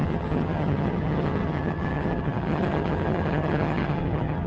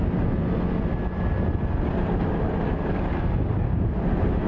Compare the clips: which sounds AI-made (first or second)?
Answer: first